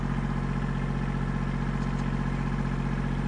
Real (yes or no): yes